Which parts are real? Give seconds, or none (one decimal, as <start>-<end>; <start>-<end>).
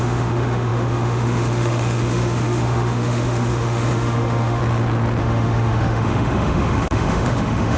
4.6-5.2